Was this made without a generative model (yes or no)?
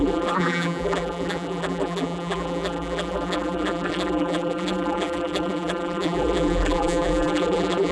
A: no